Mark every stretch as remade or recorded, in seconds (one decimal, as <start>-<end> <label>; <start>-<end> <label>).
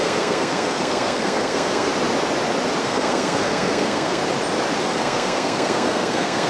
0.0-1.9 remade; 1.9-2.8 recorded; 2.8-4.2 remade; 4.2-4.8 recorded; 4.8-6.5 remade